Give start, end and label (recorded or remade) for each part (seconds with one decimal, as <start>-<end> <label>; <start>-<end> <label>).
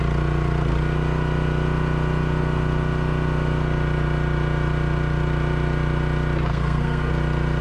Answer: 0.0-6.5 recorded; 6.5-7.1 remade; 7.1-7.6 recorded